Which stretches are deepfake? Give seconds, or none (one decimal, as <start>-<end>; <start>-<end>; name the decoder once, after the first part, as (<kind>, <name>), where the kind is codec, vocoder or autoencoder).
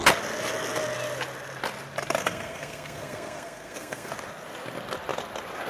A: 2.2-4.1 (codec, SNAC)